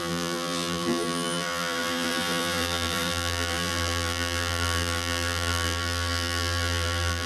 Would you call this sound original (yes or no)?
no